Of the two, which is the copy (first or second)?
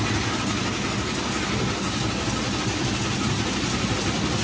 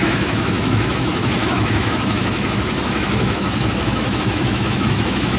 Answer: second